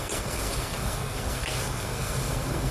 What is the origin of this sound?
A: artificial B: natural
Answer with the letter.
A